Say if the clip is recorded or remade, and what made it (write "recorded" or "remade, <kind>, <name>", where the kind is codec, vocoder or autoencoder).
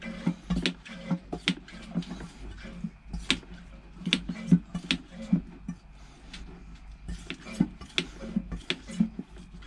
recorded